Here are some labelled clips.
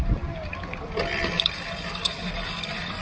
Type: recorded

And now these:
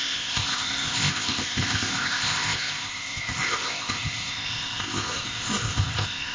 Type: remade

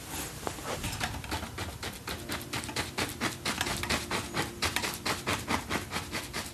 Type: recorded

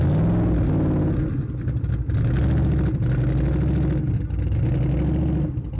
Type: recorded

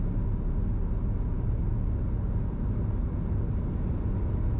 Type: recorded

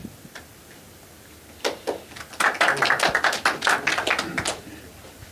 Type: recorded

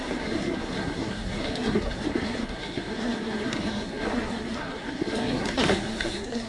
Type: remade